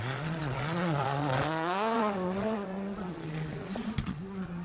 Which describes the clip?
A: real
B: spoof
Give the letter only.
B